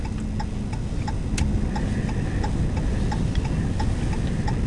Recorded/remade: recorded